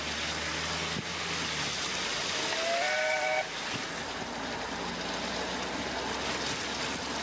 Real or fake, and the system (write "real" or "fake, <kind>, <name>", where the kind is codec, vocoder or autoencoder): real